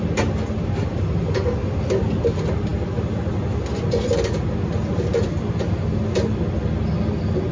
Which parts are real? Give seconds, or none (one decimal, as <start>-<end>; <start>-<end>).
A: 0.0-7.5